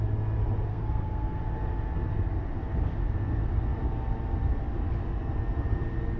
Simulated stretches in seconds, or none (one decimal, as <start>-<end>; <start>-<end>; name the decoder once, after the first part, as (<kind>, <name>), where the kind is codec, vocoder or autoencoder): 0.7-1.4 (codec, SNAC)